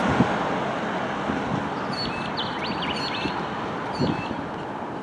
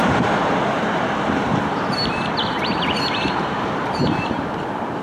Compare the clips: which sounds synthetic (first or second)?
second